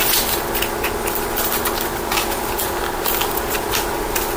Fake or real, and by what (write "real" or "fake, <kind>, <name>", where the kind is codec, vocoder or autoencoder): real